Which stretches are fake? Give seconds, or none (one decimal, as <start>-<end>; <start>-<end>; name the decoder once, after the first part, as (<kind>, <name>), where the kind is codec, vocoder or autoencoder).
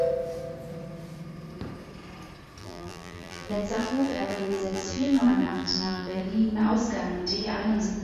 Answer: 2.6-6.2 (vocoder, BigVGAN v2)